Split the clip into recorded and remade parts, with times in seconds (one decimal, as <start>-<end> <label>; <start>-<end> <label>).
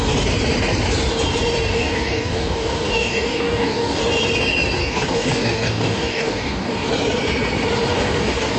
0.0-1.7 recorded; 1.7-4.0 remade; 4.0-4.8 recorded; 4.8-6.9 remade; 6.9-7.9 recorded; 7.9-8.6 remade